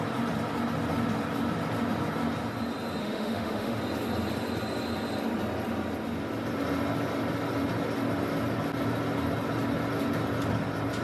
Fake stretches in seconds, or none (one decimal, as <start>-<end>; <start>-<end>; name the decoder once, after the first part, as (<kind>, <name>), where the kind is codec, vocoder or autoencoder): 3.0-3.8 (autoencoder, DAC-VAE)